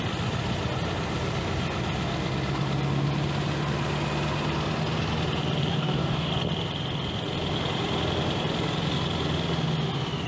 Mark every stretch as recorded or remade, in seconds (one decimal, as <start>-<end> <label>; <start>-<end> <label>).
0.0-5.7 recorded; 5.7-6.3 remade; 6.3-10.3 recorded